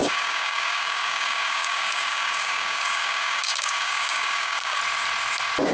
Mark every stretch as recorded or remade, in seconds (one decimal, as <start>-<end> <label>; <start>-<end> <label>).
0.0-4.8 remade; 4.8-5.7 recorded